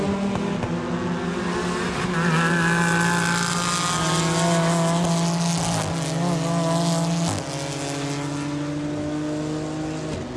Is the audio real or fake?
real